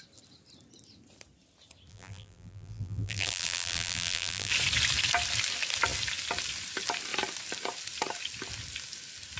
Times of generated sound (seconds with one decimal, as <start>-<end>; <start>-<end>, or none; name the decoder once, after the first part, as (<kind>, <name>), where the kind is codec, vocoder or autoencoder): 1.9-4.5 (vocoder, BigVGAN v2)